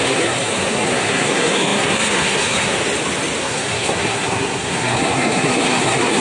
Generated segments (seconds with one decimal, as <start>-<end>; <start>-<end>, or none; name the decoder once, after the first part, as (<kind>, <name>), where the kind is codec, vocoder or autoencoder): 0.0-2.8 (codec, SNAC); 3.4-6.2

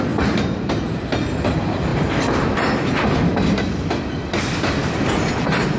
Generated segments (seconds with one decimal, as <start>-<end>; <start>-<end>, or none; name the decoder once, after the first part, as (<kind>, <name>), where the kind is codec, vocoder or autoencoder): none

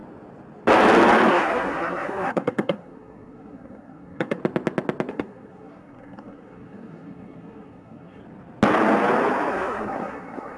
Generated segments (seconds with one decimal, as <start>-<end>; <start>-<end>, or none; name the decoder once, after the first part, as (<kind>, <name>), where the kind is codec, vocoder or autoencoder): 1.3-4.4 (codec, SNAC); 5.1-8.2; 9.5-10.6

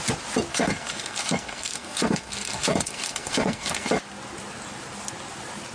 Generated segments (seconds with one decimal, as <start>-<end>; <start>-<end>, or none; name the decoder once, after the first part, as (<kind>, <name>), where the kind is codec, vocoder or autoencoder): 0.5-3.9 (codec, SNAC)

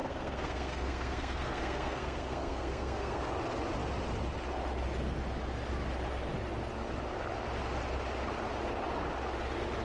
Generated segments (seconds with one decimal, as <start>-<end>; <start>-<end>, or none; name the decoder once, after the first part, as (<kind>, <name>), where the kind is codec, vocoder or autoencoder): 0.0-3.2 (codec, SNAC)

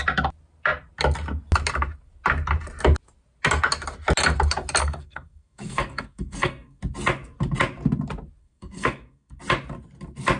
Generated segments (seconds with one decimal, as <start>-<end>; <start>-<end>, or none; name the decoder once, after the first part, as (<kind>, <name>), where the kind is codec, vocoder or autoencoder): 4.8-6.8 (codec, SNAC); 8.4-9.4

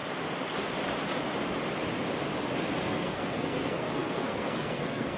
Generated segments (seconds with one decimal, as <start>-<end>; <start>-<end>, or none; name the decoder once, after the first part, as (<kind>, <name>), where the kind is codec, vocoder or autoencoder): 2.8-5.2 (codec, SNAC)